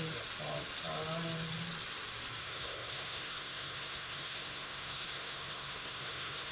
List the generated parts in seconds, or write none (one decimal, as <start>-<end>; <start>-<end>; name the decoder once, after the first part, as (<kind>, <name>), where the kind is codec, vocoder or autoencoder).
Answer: 2.4-6.5 (codec, SNAC)